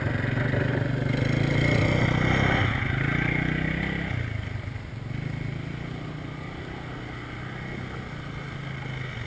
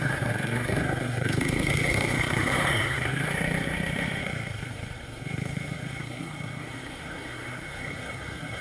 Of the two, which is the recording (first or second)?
first